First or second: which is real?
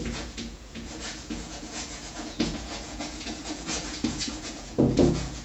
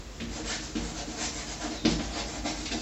second